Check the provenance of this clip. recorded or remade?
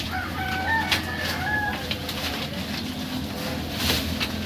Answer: remade